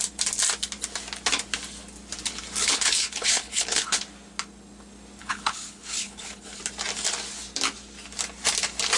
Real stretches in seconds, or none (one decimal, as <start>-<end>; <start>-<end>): 0.0-2.6; 4.0-5.2; 6.6-9.0